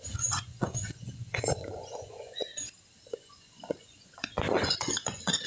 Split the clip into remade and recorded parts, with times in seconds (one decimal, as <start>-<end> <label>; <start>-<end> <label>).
0.0-2.5 remade; 2.5-3.1 recorded; 3.1-5.5 remade